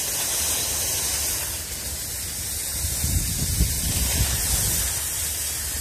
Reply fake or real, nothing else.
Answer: real